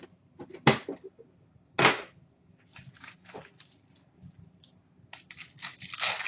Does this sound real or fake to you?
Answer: real